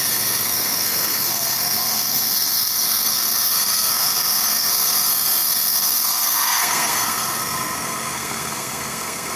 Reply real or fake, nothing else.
fake